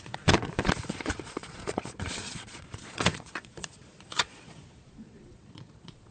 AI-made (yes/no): yes